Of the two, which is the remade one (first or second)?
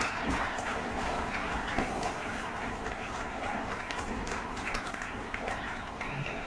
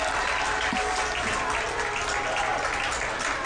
first